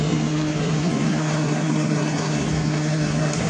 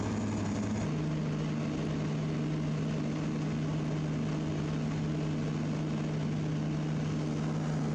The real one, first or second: second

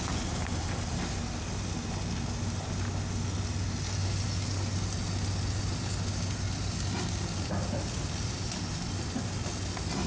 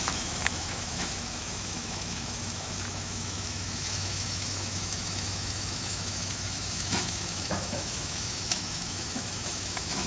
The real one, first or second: first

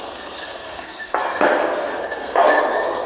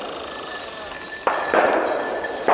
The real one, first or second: second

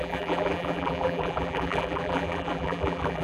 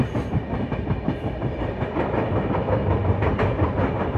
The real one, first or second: second